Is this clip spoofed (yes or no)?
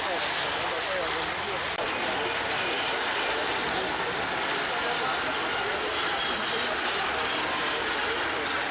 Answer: no